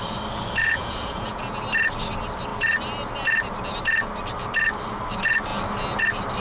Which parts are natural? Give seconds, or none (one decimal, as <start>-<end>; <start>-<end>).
0.0-0.6; 1.6-6.4